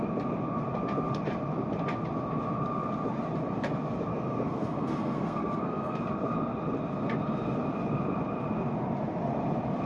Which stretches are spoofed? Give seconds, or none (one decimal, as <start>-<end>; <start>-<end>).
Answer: 4.1-6.0